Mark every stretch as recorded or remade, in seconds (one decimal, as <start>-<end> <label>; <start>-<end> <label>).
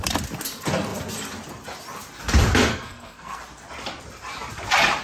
0.0-2.7 recorded; 2.7-3.4 remade; 3.4-5.0 recorded